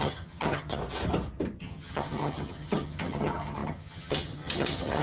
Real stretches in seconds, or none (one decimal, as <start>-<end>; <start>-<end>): 0.8-1.6